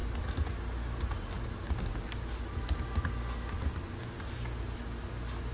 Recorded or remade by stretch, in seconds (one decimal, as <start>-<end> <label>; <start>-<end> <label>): 0.0-5.5 recorded